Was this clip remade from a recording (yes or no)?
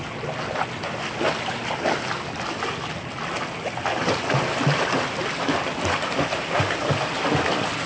no